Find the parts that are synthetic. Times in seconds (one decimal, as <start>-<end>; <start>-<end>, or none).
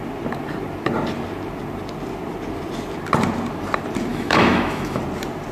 4.1-5.0